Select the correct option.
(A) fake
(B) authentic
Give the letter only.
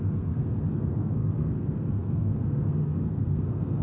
A